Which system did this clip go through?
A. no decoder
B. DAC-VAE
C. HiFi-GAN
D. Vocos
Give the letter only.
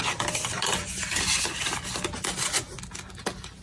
A